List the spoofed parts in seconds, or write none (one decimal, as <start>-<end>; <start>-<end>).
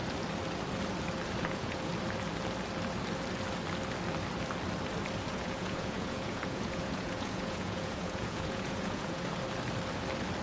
1.4-1.9; 5.3-9.2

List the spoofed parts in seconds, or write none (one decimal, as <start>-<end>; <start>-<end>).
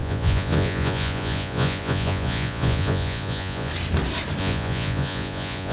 0.0-3.7; 4.4-5.7